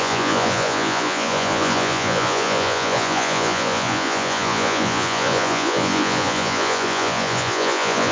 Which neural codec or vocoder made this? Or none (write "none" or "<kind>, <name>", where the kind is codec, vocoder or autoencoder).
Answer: vocoder, Vocos